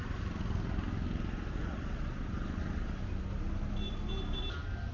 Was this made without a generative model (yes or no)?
yes